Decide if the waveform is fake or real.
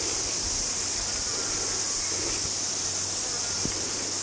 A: real